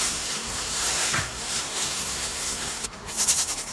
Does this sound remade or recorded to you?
remade